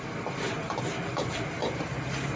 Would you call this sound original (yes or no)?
yes